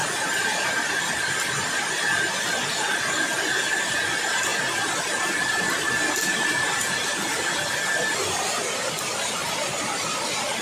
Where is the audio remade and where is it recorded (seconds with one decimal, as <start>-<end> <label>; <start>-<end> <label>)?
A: 0.0-10.6 recorded